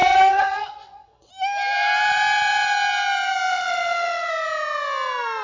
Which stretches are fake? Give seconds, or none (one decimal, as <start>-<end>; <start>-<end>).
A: 0.0-1.3; 3.5-4.3